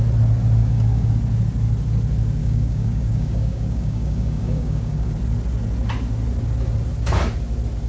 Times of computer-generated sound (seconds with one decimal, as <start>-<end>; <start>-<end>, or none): 0.6-1.1; 2.4-5.1